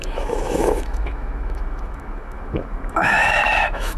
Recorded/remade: remade